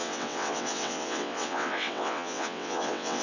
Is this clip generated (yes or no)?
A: yes